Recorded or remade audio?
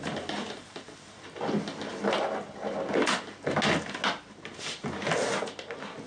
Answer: recorded